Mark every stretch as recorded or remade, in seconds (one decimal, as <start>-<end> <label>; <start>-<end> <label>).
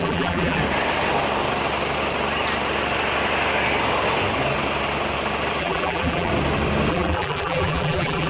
0.0-0.6 remade; 0.6-5.6 recorded; 5.6-6.3 remade; 6.3-6.9 recorded; 6.9-8.3 remade